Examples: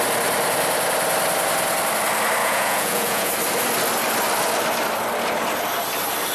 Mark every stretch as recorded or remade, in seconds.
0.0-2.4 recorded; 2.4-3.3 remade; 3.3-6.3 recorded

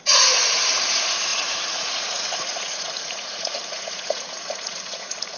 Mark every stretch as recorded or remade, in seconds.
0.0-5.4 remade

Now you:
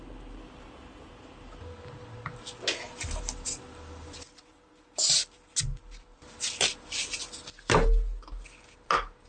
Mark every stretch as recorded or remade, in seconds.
0.0-9.3 recorded